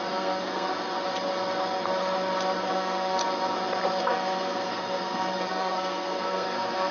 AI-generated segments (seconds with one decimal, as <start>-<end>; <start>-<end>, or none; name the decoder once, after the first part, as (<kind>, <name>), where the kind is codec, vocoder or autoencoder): 0.0-0.7 (codec, SNAC); 2.7-3.2; 4.0-6.9